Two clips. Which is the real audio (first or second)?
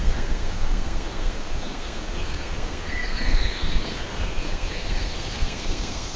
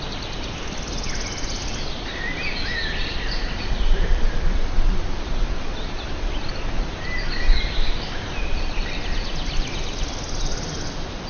second